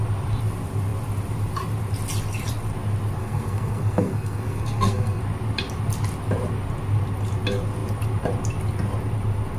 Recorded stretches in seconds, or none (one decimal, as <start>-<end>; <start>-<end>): 0.0-3.2; 5.2-9.6